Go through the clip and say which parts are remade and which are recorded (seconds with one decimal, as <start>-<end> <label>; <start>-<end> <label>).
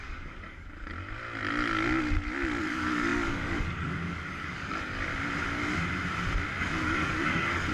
0.0-0.9 remade; 0.9-2.6 recorded; 2.6-5.1 remade; 5.1-6.6 recorded; 6.6-7.7 remade